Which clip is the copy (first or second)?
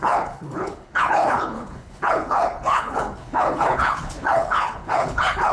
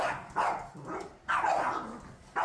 first